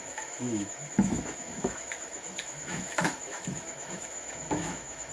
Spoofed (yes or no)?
yes